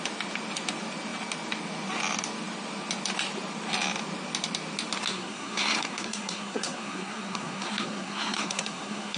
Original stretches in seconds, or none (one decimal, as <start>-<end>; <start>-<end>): 0.0-5.1